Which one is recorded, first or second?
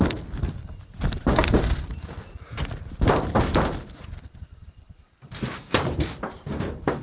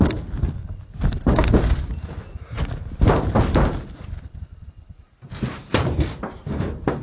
second